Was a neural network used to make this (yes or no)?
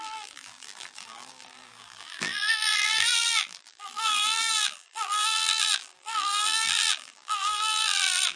yes